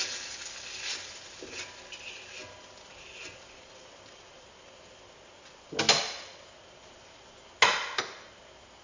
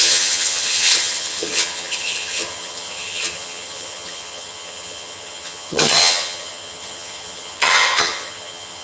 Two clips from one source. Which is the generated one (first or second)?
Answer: second